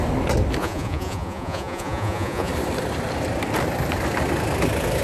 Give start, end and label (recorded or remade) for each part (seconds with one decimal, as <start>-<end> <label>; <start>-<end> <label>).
0.0-0.6 recorded; 0.6-2.5 remade; 2.5-5.0 recorded

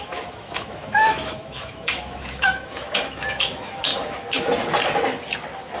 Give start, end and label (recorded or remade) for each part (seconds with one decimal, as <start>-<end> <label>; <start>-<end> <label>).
0.0-3.9 remade; 3.9-5.8 recorded

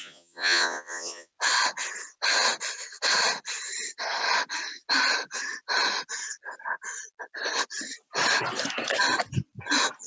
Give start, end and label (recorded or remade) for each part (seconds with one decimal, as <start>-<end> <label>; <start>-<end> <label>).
0.0-1.3 remade; 1.3-10.1 recorded

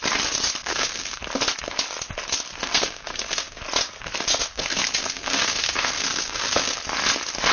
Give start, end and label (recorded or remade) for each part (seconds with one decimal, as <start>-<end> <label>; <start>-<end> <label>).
0.0-0.6 recorded; 0.6-1.2 remade; 1.2-2.6 recorded; 2.6-3.6 remade; 3.6-4.4 recorded; 4.4-6.8 remade; 6.8-7.5 recorded

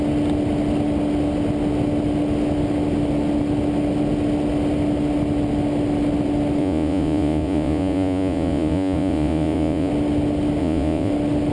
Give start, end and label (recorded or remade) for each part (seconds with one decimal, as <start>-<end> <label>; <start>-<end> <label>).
0.0-6.6 recorded; 6.6-9.9 remade; 9.9-10.6 recorded; 10.6-11.1 remade; 11.1-11.5 recorded

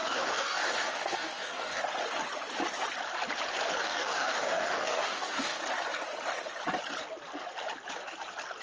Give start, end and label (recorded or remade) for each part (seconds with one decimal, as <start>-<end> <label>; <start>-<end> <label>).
0.0-1.8 remade; 1.8-3.8 recorded; 3.8-5.6 remade; 5.6-8.6 recorded